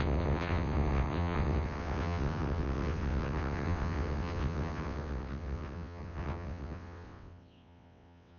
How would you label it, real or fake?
fake